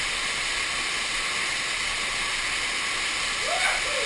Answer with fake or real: real